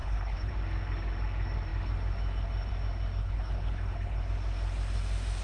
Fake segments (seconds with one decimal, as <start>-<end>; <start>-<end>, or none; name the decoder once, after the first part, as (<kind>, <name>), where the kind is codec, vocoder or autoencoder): 0.0-0.5 (codec, HILCodec); 3.2-4.2